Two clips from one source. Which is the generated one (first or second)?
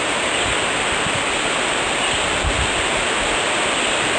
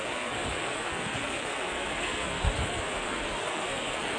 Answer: second